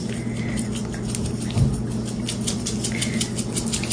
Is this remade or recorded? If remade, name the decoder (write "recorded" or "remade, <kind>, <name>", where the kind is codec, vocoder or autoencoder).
recorded